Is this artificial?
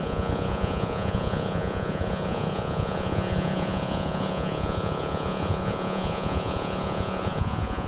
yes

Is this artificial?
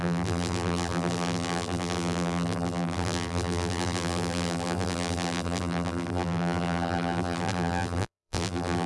yes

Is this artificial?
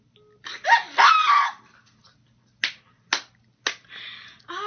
no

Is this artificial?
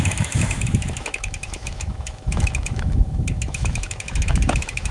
yes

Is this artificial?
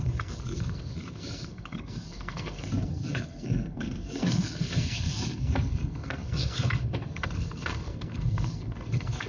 yes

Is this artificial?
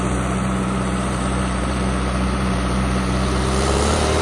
yes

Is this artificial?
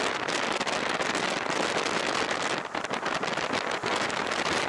no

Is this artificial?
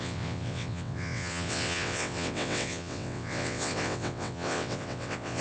yes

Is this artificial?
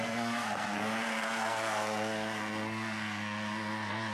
yes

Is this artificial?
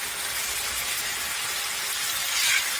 no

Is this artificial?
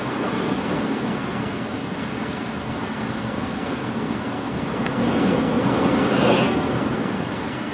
yes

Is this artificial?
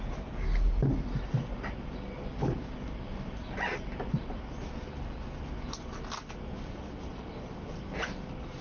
no